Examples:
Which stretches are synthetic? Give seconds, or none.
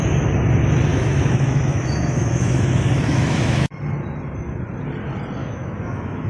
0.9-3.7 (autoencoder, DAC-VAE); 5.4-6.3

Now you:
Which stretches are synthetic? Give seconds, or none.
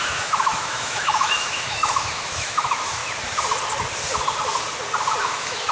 0.0-3.0 (autoencoder, DAC-VAE); 5.2-5.7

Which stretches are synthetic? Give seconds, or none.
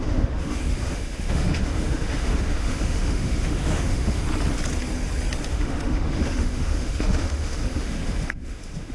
0.0-4.2 (autoencoder, DAC-VAE); 5.5-8.9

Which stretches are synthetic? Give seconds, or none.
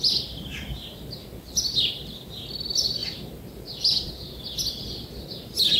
none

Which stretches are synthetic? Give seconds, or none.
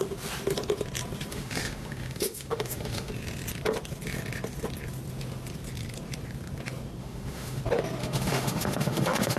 1.3-3.1 (autoencoder, DAC-VAE); 7.0-7.6; 8.0-9.4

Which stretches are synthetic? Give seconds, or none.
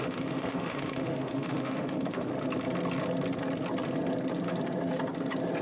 0.0-2.3 (autoencoder, DAC-VAE)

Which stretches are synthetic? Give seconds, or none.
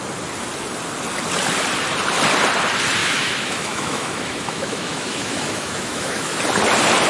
3.0-6.4 (autoencoder, DAC-VAE)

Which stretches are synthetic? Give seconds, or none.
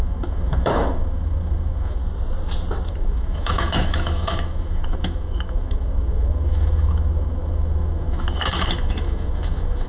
0.0-2.0 (autoencoder, DAC-VAE); 2.9-9.9